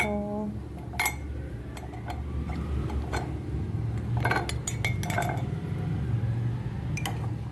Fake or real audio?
real